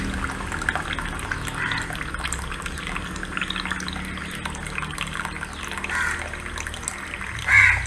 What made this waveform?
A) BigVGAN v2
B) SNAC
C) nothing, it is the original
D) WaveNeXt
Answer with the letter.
C